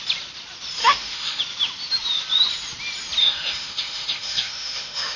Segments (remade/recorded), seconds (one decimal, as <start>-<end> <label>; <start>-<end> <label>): 0.0-0.8 recorded; 0.8-1.4 remade; 1.4-3.2 recorded; 3.2-5.2 remade